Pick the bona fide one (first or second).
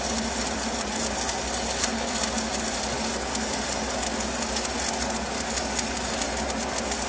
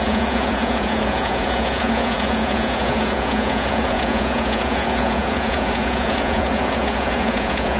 first